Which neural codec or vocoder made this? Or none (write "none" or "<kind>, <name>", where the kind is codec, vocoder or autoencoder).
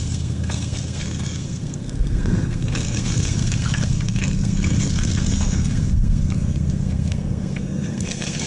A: codec, SNAC